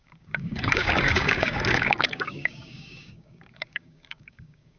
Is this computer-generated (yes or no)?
yes